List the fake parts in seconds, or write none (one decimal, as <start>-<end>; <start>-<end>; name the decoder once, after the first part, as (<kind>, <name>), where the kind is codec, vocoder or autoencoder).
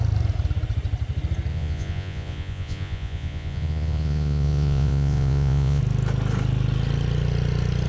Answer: 1.5-5.8 (vocoder, Vocos)